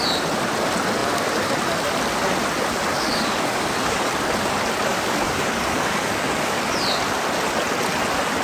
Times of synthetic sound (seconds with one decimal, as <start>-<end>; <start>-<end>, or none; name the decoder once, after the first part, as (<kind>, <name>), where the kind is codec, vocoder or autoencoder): 2.9-4.1 (codec, DAC); 4.9-6.6